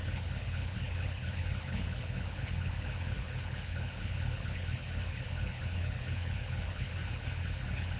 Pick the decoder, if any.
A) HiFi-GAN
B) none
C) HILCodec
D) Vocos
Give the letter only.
C